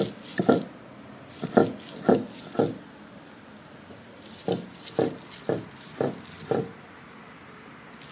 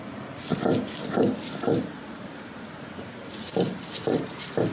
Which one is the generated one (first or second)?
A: second